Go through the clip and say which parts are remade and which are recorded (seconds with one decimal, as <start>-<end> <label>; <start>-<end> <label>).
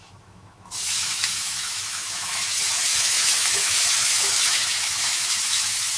0.0-6.0 remade